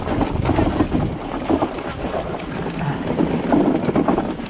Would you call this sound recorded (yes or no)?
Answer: yes